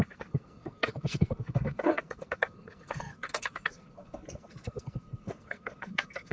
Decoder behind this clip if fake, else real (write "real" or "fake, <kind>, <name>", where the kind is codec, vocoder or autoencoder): fake, codec, SNAC